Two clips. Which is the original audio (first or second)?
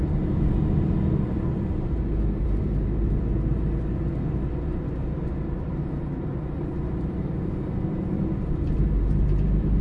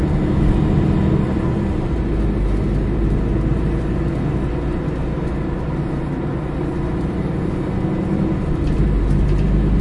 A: second